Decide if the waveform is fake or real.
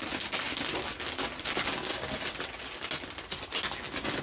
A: real